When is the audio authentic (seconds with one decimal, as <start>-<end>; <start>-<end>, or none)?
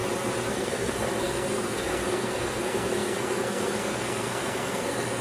0.0-0.5